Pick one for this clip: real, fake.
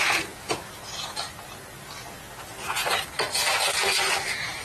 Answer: real